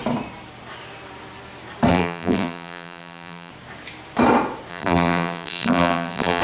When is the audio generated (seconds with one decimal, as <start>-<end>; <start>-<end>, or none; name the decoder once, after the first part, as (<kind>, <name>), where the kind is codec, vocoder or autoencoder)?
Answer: 1.9-3.5 (vocoder, BigVGAN v2); 4.7-6.4

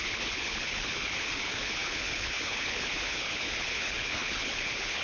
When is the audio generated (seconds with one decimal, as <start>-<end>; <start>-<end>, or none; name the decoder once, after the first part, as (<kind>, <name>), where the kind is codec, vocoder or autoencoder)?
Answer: 0.0-5.0 (codec, HILCodec)

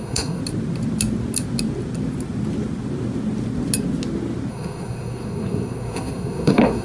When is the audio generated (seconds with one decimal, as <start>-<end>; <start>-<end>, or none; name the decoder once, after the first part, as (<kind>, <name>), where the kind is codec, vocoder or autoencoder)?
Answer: 0.0-0.4 (codec, SNAC); 4.5-6.8

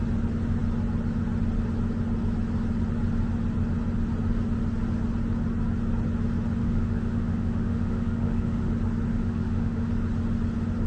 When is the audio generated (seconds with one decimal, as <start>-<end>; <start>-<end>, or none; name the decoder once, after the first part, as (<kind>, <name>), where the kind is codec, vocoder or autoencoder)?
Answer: 6.6-8.7 (autoencoder, DAC-VAE); 9.1-9.9

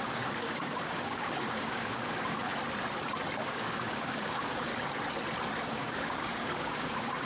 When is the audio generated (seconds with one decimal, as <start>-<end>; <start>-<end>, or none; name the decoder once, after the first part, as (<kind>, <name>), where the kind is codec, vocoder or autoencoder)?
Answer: 0.0-2.6 (codec, DAC); 3.5-4.7; 5.7-7.3